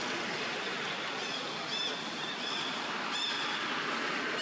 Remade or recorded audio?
recorded